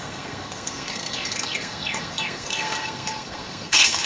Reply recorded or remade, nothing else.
remade